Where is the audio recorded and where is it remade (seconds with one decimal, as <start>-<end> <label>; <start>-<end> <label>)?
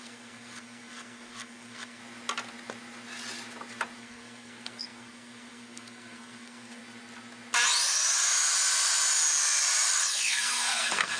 0.0-2.0 remade; 2.0-4.0 recorded; 4.0-6.8 remade; 6.8-10.1 recorded; 10.1-11.2 remade